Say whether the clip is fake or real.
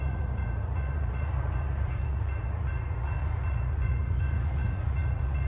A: fake